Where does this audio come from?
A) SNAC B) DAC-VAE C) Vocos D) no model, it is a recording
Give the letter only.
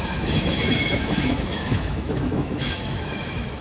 B